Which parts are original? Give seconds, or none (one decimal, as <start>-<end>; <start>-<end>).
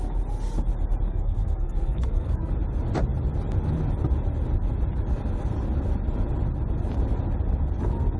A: 0.0-1.1; 2.5-8.2